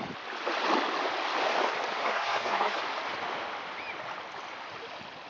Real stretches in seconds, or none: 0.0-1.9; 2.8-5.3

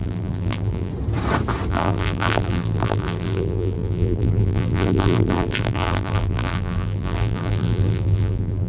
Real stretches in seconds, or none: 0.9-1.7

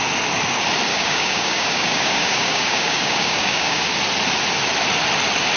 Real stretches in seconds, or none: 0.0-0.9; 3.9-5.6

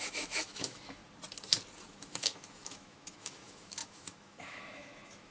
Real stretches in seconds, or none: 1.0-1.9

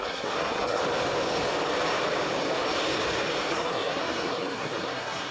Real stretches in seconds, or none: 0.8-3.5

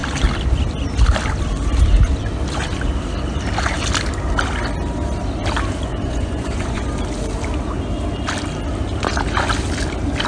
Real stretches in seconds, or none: 0.0-5.9; 6.9-10.3

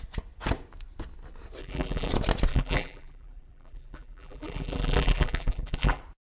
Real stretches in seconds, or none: 0.0-1.6; 2.1-2.5; 6.0-6.4

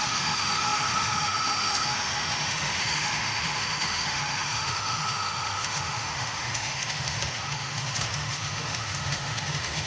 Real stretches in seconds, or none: none